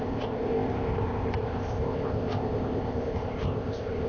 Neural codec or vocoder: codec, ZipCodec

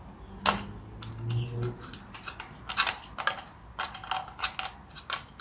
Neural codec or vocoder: none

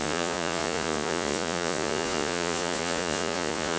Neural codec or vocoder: vocoder, Vocos